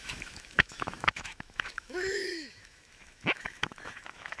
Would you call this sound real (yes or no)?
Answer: no